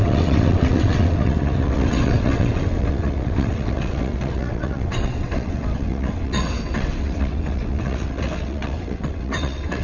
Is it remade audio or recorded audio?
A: remade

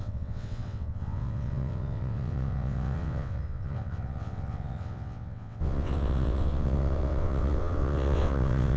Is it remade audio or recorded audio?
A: remade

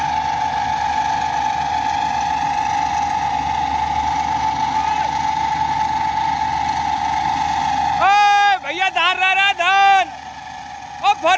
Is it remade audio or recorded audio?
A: recorded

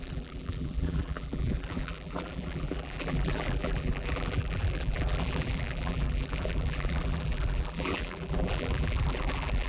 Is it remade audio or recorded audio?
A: remade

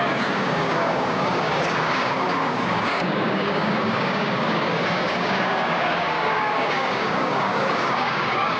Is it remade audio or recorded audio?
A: remade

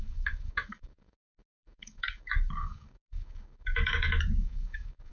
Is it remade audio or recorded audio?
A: remade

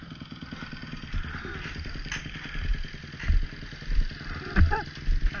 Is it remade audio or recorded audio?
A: recorded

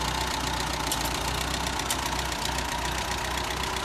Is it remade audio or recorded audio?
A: recorded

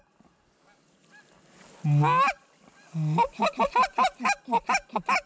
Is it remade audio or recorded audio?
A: recorded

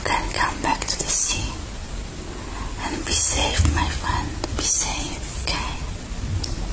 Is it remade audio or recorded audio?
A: recorded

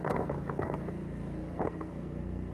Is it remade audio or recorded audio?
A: remade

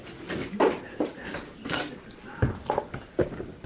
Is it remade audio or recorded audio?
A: recorded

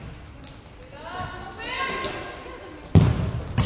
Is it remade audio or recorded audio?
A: recorded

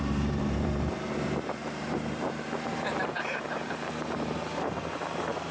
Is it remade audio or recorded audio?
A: remade